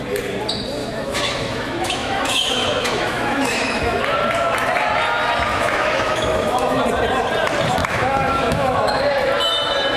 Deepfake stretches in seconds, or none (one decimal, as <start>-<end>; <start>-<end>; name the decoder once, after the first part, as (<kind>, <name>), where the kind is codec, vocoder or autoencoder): 0.8-4.0 (autoencoder, DAC-VAE); 5.5-6.8; 7.8-9.0